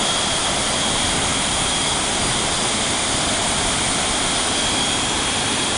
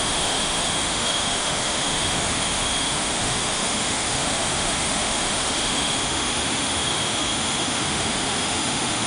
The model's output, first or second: second